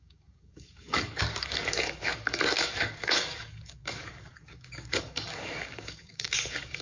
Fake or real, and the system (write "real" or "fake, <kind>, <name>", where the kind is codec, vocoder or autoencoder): fake, codec, DAC